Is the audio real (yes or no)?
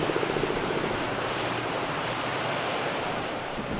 no